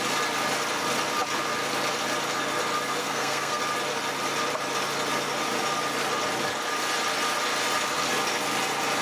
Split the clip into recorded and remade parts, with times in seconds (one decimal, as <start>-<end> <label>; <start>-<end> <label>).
0.0-3.0 recorded; 3.0-3.6 remade; 3.6-9.0 recorded

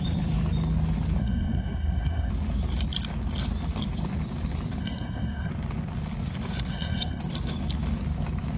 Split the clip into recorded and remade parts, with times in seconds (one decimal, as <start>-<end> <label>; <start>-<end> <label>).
0.0-1.2 recorded; 1.2-2.3 remade; 2.3-4.8 recorded; 4.8-5.5 remade; 5.5-6.7 recorded; 6.7-7.2 remade; 7.2-8.6 recorded